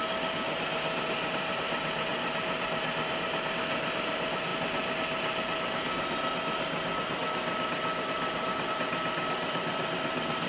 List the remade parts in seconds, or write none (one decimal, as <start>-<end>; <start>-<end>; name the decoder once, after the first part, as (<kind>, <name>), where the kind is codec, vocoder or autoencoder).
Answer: none